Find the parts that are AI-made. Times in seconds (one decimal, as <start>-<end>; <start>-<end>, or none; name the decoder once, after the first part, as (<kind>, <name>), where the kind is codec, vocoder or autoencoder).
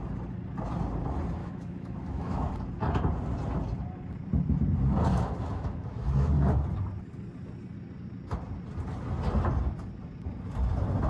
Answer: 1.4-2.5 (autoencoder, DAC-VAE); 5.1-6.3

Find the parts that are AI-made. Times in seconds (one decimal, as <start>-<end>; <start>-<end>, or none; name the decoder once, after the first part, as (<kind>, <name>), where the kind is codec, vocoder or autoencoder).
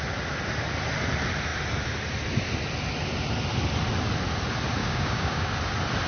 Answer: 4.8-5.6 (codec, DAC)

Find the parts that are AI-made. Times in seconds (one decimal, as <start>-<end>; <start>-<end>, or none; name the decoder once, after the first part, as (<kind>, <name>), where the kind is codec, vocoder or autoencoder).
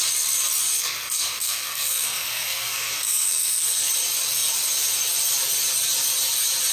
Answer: 0.7-3.9 (codec, SNAC)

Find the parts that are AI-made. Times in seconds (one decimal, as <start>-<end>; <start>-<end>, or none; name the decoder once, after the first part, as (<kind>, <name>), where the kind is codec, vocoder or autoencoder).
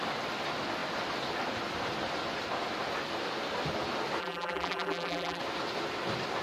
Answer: 4.2-5.4 (vocoder, BigVGAN v2)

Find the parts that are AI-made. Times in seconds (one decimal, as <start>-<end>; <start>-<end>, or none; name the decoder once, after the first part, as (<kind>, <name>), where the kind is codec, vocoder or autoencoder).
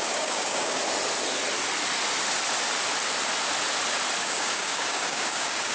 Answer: 0.0-0.8 (codec, DAC); 4.2-5.7